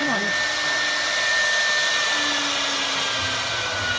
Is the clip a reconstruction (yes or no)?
no